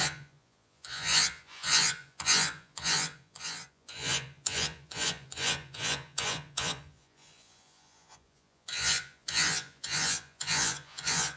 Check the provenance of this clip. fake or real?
fake